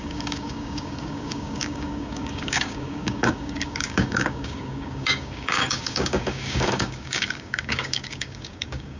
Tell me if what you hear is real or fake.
fake